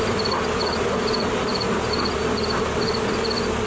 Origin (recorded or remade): recorded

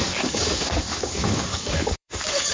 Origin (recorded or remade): remade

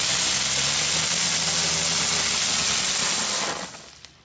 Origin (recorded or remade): recorded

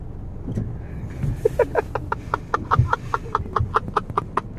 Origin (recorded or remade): recorded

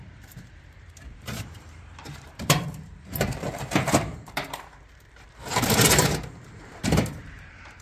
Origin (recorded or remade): remade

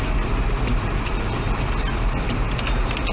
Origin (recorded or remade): recorded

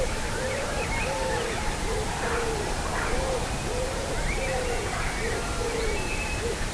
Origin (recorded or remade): remade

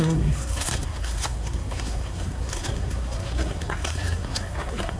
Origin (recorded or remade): remade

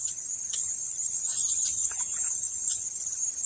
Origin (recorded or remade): remade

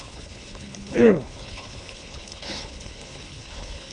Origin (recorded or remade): remade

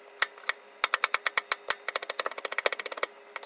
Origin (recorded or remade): recorded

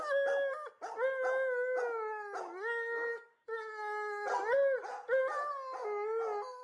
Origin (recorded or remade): recorded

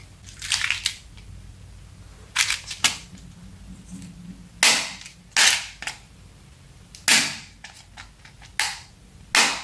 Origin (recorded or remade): recorded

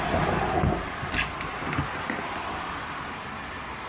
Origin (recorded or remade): recorded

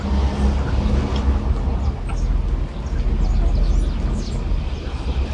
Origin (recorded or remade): recorded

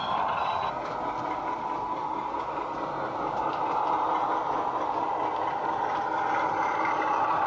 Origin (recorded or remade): recorded